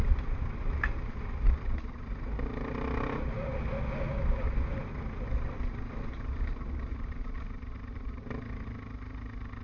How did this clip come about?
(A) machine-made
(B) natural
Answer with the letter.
B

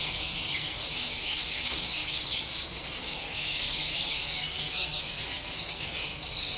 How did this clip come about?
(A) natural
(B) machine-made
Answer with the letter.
B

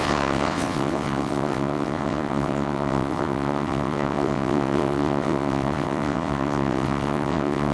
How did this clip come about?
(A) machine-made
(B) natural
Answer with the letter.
A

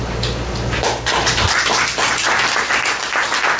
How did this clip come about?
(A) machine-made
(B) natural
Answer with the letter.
B